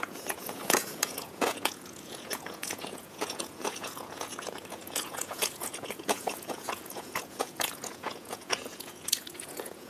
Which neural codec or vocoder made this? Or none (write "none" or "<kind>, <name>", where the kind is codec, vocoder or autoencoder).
vocoder, Vocos